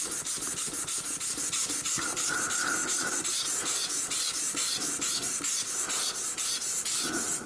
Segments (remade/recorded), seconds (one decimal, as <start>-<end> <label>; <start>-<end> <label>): 0.0-7.5 recorded